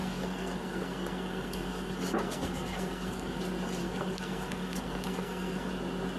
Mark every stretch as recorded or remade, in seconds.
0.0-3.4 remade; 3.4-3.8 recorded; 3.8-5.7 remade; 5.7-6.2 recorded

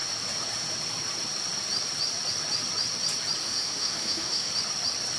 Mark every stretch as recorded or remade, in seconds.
0.0-3.4 recorded; 3.4-4.5 remade; 4.5-5.2 recorded

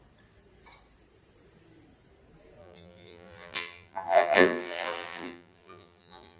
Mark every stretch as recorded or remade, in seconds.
0.0-2.6 recorded; 2.6-6.4 remade